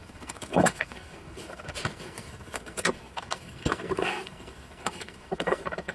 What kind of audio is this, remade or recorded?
remade